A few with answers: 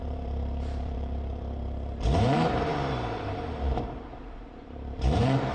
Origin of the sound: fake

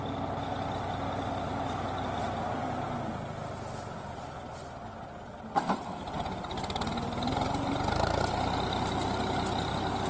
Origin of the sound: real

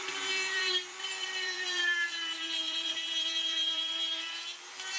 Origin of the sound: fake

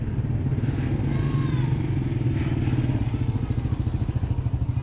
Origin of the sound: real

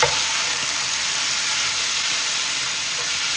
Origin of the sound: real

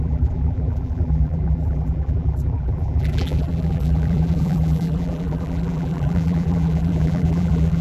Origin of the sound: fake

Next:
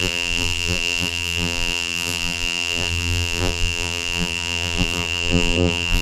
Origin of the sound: fake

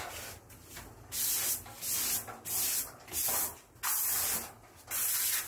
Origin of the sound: real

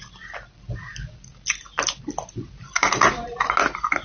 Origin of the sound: fake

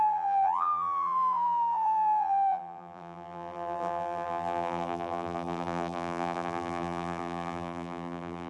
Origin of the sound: fake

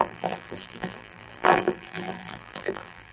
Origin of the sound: fake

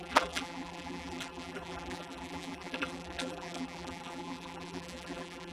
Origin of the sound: fake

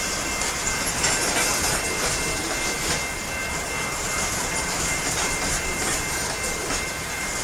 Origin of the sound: fake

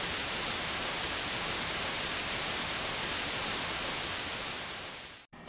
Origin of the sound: fake